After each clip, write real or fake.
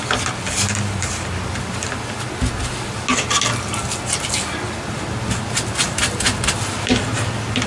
real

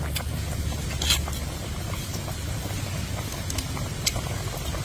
real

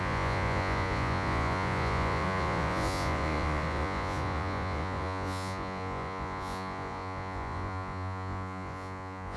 fake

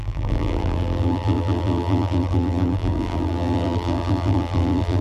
fake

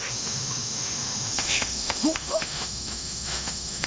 fake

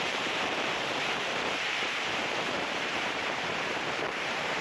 fake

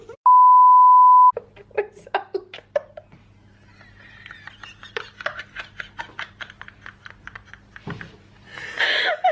real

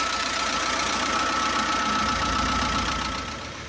real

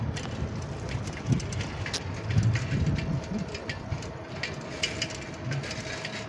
real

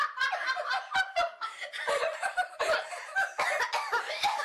fake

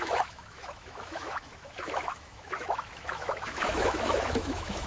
fake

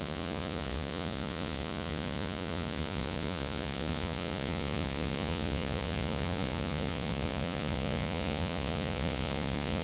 fake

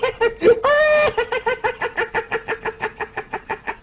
real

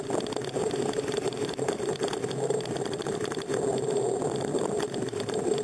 real